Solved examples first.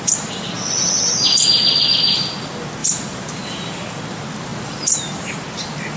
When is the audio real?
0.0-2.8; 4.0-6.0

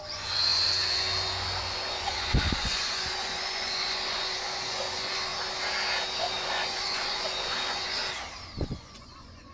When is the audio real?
5.3-6.2; 8.0-8.6

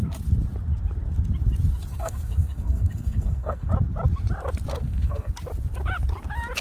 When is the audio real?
0.0-1.9; 3.7-4.7; 5.3-6.6